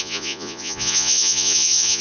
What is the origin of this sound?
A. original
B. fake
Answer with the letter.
B